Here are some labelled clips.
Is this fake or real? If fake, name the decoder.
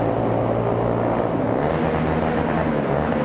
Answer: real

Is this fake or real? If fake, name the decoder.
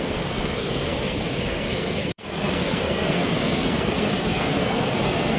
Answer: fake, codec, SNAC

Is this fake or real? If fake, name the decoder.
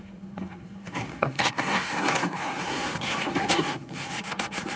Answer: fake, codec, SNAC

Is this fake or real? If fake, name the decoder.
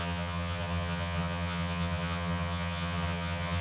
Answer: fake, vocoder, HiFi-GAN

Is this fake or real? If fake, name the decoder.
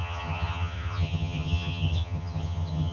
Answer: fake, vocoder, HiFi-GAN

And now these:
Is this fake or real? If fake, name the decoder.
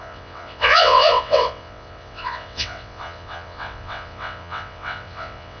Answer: fake, vocoder, WaveNeXt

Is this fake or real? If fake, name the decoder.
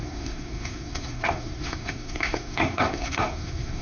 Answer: fake, codec, SNAC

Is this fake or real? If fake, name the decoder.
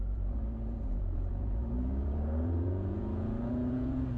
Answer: fake, vocoder, Vocos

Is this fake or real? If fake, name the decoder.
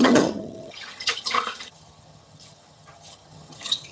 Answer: fake, vocoder, HiFi-GAN